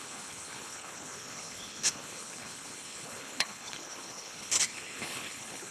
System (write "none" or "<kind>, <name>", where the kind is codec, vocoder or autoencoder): codec, HILCodec